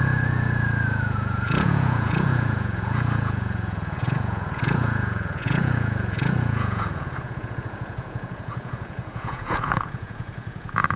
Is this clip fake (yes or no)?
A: yes